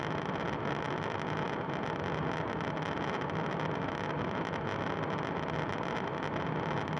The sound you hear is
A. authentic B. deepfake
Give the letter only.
A